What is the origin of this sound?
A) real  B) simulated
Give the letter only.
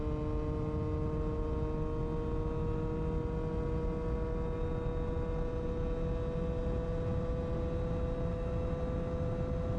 A